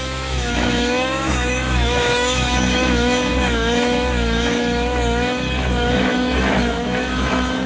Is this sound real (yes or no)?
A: no